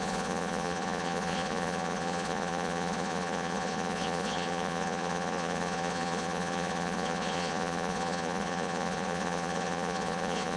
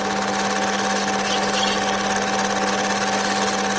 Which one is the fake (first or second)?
first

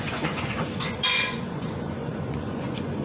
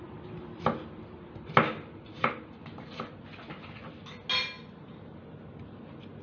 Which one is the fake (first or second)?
first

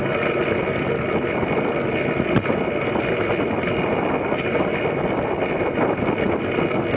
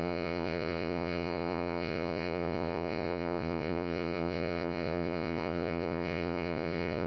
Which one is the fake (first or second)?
second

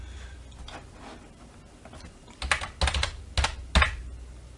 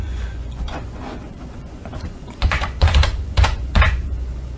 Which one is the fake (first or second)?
second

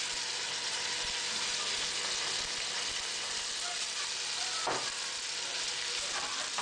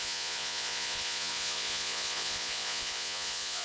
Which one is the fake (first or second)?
second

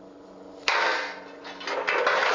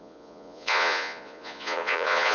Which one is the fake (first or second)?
second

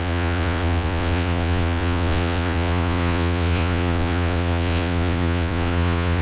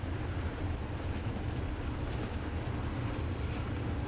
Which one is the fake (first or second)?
first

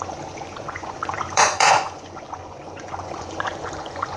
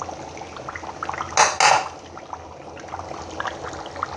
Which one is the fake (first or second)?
first